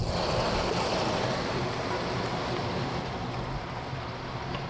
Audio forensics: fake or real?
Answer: real